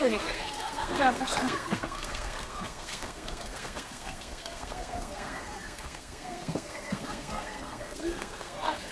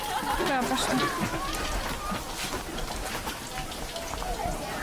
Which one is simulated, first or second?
first